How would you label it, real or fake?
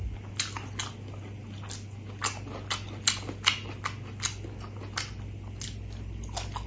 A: real